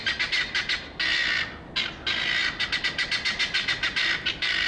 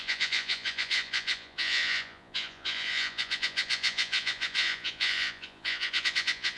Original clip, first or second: first